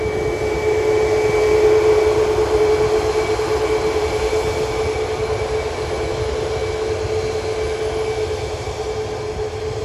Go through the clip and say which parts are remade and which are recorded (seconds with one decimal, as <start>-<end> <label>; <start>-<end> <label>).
0.0-9.8 recorded